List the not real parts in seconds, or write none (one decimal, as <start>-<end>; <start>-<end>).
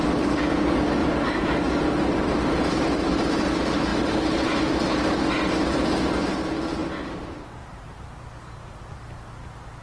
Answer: 1.0-1.6; 6.8-7.3; 7.7-8.3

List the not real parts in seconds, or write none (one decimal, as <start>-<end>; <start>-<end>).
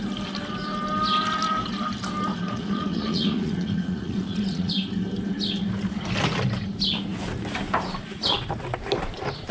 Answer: 2.3-4.7